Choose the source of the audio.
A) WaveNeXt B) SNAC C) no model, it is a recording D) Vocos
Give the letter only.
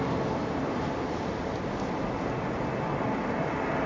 C